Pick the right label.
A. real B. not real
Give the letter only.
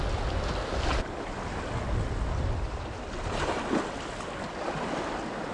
A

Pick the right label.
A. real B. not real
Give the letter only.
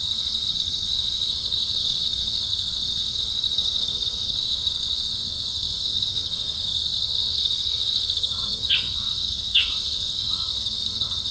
B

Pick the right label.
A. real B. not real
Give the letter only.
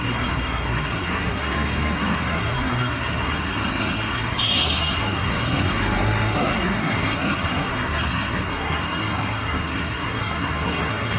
B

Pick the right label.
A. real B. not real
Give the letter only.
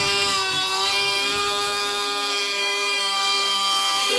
B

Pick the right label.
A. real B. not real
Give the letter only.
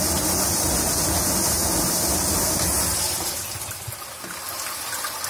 A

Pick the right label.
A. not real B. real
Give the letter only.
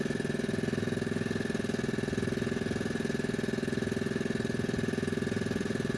B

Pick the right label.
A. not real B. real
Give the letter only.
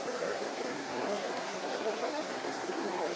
A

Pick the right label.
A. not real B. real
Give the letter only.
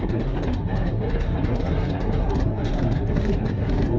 A